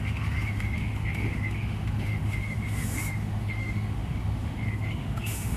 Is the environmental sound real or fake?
fake